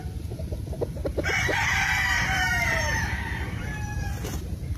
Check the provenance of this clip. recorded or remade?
remade